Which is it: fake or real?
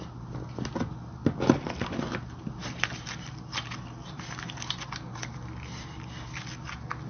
real